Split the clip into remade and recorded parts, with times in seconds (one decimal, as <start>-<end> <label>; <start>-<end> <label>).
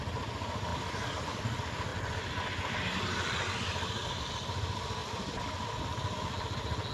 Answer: 0.0-0.7 recorded; 0.7-1.4 remade; 1.4-5.0 recorded; 5.0-5.8 remade; 5.8-6.9 recorded